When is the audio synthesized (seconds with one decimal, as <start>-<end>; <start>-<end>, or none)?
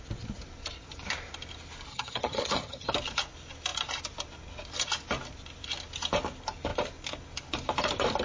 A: 1.9-2.9